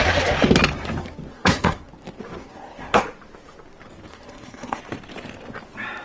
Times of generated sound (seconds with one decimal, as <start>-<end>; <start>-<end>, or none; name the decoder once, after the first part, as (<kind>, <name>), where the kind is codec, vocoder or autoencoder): 1.3-1.9 (codec, SNAC); 2.4-3.0; 4.1-4.8